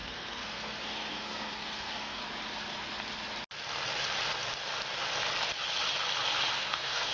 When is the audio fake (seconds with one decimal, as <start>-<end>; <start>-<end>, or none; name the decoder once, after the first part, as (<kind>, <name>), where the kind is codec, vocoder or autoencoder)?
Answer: 0.0-2.2 (codec, SNAC); 6.5-7.1